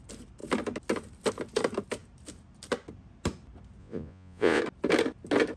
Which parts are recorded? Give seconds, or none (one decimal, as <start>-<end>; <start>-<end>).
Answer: 0.0-3.8; 4.6-5.6

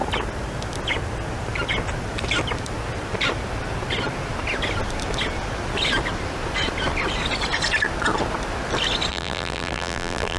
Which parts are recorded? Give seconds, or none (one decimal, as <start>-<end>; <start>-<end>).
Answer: 0.0-9.1

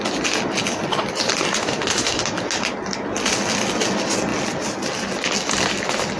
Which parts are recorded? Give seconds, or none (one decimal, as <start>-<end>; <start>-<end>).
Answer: 0.0-1.6; 2.2-6.2

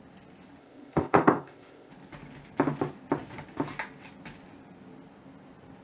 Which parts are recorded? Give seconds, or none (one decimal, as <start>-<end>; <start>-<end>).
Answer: 0.0-0.6; 1.9-5.8